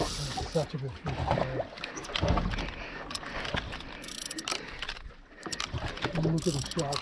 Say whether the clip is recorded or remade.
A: recorded